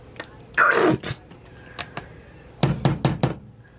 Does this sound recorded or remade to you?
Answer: recorded